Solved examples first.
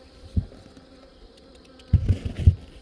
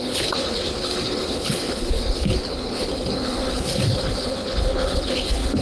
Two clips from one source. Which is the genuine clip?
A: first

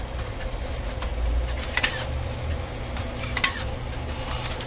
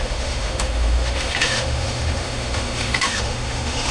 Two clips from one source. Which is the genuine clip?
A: first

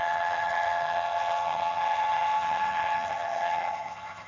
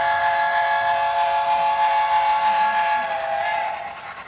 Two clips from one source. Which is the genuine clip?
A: second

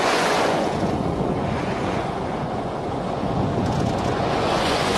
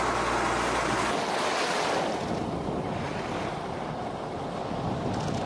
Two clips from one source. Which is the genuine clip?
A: second